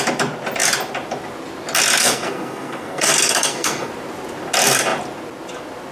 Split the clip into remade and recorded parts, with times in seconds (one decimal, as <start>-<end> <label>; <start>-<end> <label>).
0.0-2.0 recorded; 2.0-3.9 remade; 3.9-5.9 recorded